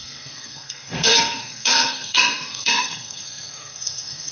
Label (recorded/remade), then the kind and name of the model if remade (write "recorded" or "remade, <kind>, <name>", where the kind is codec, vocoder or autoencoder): remade, codec, SNAC